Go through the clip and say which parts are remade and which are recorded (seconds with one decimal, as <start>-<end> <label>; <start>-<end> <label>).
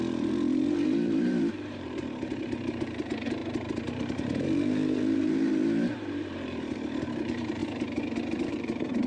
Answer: 0.0-7.6 remade; 7.6-8.5 recorded; 8.5-9.1 remade